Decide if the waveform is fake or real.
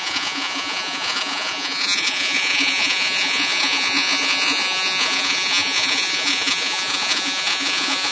fake